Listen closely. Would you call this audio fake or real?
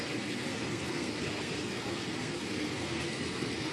fake